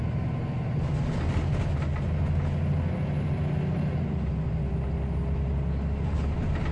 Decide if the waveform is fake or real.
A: real